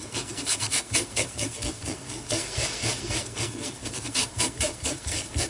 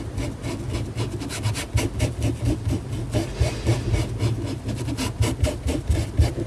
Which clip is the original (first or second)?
second